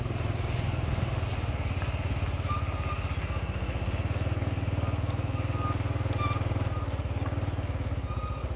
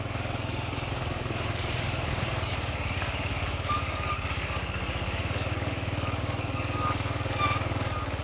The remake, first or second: second